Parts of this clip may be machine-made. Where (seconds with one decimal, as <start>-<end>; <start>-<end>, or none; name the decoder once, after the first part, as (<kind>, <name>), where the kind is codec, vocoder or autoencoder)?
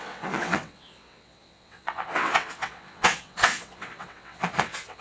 0.0-5.0 (vocoder, WaveNeXt)